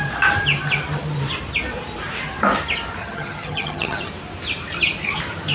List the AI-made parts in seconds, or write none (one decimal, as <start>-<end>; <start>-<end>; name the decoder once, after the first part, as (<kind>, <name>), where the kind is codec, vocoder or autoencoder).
3.0-4.1 (vocoder, HiFi-GAN)

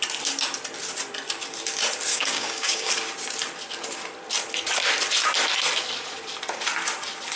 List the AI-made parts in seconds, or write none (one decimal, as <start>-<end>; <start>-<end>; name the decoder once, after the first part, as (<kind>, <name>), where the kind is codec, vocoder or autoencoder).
2.1-2.9 (codec, DAC)

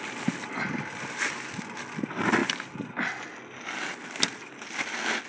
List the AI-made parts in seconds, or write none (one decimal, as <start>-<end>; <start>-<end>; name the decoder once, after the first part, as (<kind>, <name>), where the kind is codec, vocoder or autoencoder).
none